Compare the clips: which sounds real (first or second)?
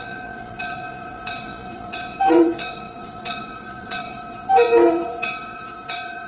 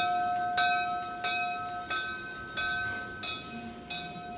second